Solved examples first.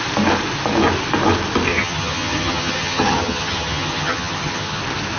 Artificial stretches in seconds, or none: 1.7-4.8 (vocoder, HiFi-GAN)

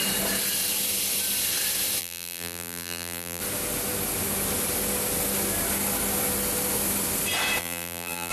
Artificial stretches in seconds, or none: 2.0-3.4 (vocoder, BigVGAN v2); 7.6-8.3

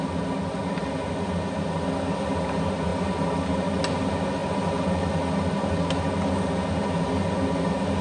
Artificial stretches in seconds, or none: none

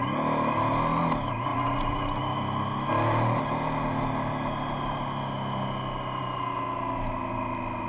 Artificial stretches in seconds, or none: none

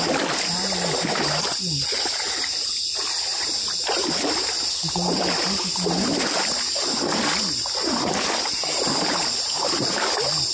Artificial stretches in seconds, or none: none

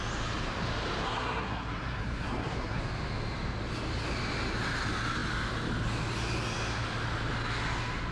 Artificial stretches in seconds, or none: 1.0-2.8 (codec, SNAC)

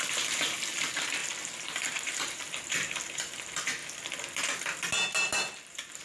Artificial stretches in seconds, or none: 0.0-3.8 (vocoder, BigVGAN v2)